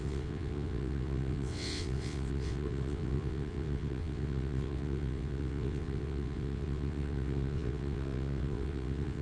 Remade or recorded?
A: remade